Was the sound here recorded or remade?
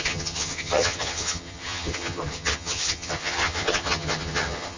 remade